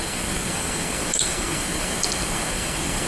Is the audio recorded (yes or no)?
no